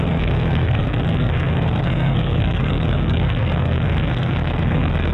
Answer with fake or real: fake